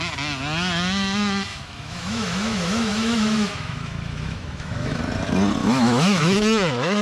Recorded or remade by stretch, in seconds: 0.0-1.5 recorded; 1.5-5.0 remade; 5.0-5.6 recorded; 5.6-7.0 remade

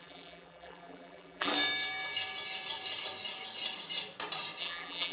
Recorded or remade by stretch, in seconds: 0.0-1.5 remade; 1.5-4.6 recorded; 4.6-5.1 remade

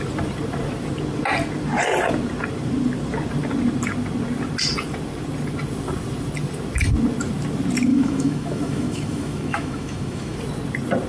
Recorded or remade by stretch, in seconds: 0.0-7.9 recorded; 7.9-10.4 remade; 10.4-11.1 recorded

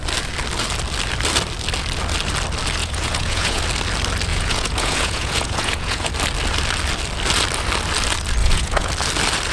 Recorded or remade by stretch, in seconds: 0.0-2.8 recorded; 2.8-3.6 remade; 3.6-4.3 recorded; 4.3-6.1 remade; 6.1-8.4 recorded; 8.4-8.9 remade; 8.9-9.5 recorded

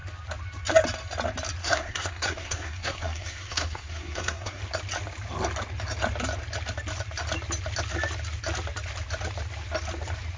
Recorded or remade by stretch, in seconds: 0.0-1.6 recorded; 1.6-4.6 remade; 4.6-10.4 recorded

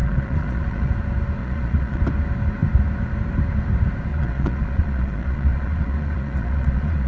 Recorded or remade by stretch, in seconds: 0.0-0.9 remade; 0.9-1.4 recorded; 1.4-2.0 remade; 2.0-4.1 recorded; 4.1-7.1 remade

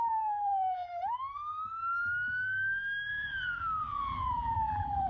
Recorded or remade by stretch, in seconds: 0.0-0.9 remade; 0.9-3.1 recorded; 3.1-5.1 remade